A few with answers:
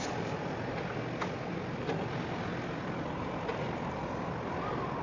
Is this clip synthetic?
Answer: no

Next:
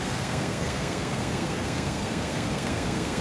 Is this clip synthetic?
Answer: yes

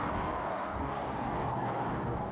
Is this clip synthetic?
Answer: yes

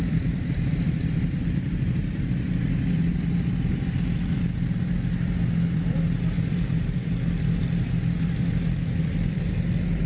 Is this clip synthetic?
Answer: yes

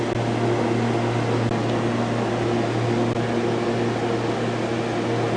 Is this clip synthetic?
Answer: no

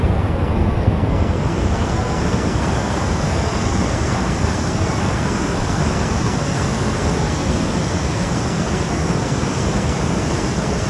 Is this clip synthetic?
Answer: yes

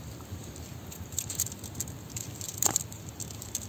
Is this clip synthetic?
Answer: yes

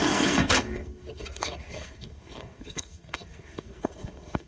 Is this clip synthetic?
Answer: yes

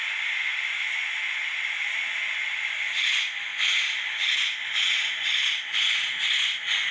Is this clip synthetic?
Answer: no